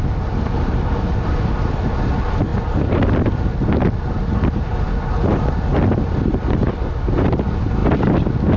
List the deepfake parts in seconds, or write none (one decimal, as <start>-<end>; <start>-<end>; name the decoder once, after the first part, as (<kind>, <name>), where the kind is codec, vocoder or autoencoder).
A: none